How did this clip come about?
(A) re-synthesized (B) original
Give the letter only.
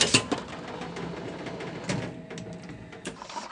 B